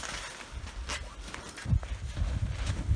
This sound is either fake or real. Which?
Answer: real